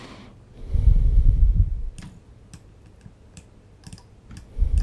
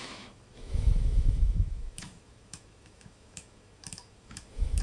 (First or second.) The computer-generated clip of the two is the second